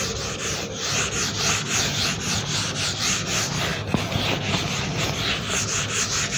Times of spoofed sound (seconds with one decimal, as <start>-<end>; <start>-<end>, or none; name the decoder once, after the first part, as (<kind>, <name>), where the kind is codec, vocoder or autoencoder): none